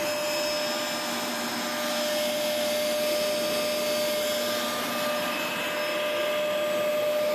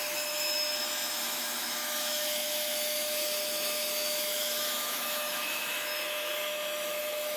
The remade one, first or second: second